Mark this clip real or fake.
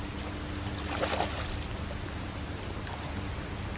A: real